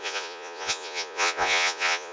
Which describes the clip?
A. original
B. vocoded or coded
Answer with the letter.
B